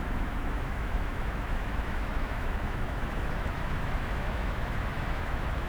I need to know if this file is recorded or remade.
remade